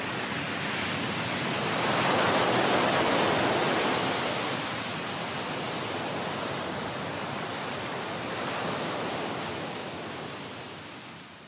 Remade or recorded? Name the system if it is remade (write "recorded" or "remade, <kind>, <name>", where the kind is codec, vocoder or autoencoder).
recorded